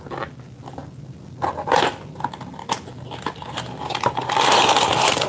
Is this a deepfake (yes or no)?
no